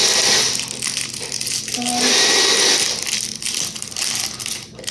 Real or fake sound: real